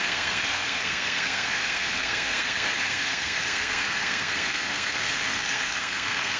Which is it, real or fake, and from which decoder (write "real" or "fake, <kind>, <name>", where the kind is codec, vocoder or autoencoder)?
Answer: fake, codec, SNAC